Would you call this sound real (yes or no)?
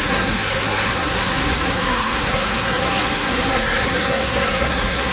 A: no